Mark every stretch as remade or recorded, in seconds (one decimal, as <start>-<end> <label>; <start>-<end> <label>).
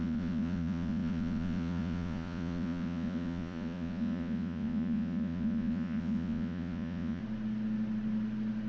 0.0-7.2 remade; 7.2-8.7 recorded